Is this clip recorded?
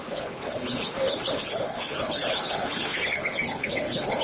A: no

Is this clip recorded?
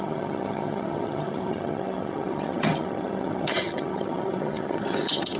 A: no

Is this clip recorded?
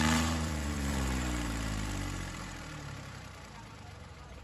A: no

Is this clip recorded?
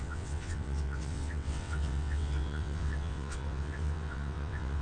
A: no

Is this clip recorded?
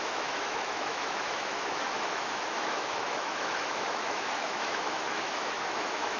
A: no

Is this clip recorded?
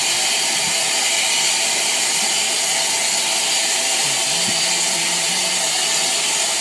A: yes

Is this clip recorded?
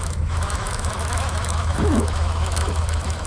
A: no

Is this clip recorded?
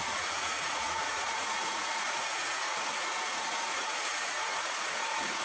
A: no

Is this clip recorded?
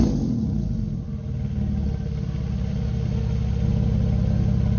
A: yes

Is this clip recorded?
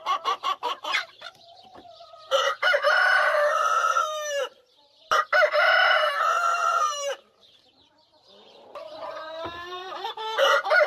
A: no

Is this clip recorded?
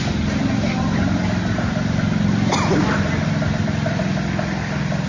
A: yes